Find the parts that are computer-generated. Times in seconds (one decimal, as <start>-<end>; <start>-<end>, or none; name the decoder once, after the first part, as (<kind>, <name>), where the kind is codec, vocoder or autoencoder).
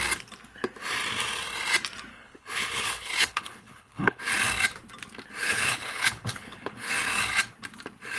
2.1-4.2 (codec, HILCodec); 5.4-6.9